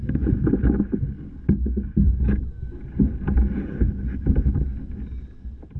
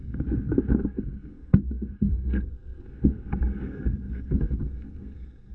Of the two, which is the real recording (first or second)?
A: first